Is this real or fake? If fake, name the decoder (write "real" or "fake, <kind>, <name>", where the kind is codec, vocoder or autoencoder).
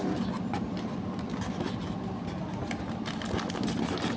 real